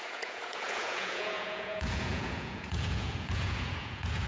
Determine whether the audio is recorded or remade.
remade